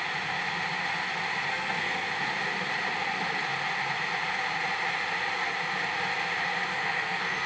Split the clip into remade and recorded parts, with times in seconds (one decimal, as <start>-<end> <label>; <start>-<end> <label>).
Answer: 0.0-1.5 recorded; 1.5-2.1 remade; 2.1-6.7 recorded; 6.7-7.5 remade